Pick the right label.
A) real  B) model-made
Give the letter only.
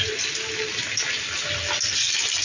A